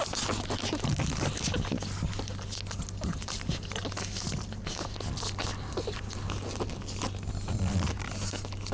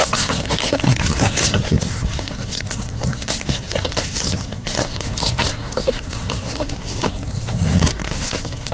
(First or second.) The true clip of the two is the first